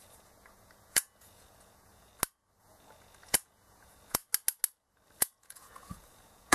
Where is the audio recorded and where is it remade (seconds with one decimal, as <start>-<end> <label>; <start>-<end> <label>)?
0.0-2.1 remade; 2.1-2.6 recorded; 2.6-4.2 remade; 4.2-5.2 recorded; 5.2-6.5 remade